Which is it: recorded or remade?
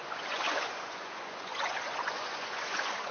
remade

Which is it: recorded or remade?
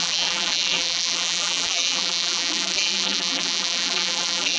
remade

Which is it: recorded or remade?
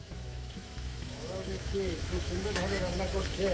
remade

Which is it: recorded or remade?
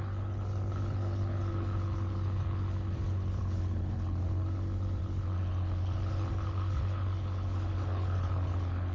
remade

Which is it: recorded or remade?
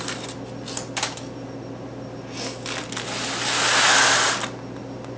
recorded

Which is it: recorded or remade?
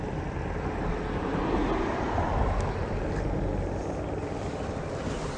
recorded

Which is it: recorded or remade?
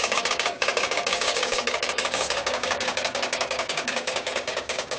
remade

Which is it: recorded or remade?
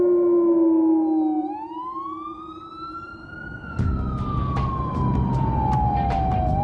recorded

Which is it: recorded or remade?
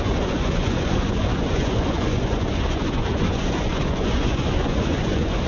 remade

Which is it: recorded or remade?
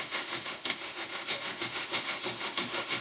remade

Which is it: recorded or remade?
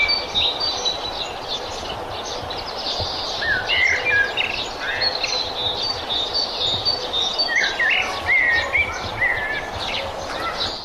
recorded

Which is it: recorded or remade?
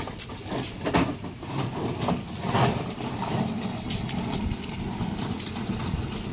recorded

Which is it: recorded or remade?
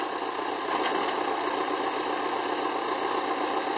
recorded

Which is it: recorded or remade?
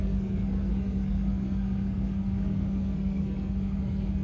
remade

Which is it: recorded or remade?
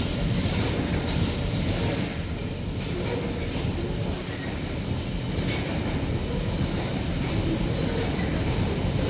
recorded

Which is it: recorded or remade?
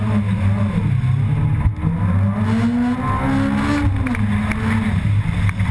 recorded